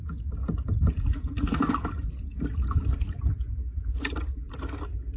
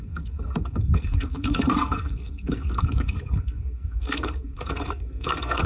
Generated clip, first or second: second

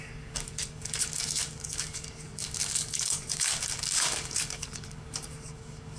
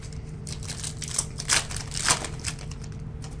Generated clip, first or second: first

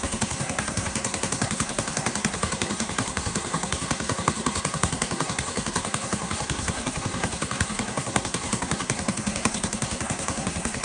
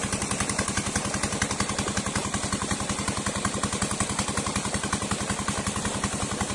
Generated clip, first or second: first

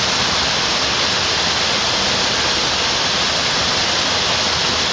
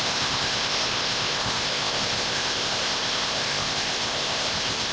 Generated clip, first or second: second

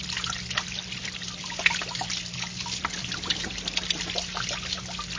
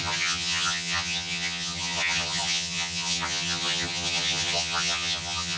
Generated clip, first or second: second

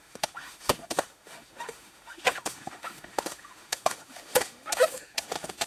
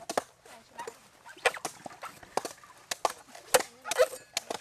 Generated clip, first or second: first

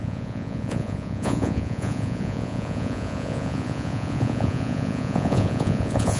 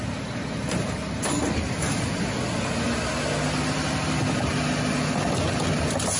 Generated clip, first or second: first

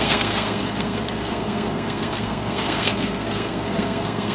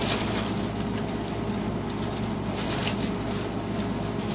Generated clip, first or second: first